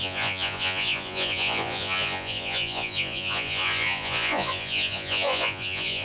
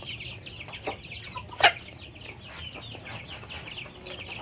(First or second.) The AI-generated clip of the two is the first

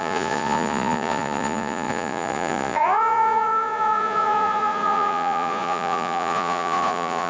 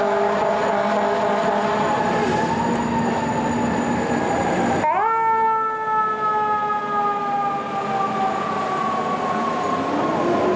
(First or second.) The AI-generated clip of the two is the first